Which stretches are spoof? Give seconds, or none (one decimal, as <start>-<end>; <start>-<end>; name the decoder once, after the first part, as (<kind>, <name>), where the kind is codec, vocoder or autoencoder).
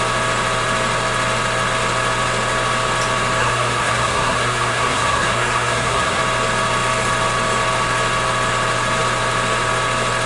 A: 3.4-6.2 (codec, SNAC)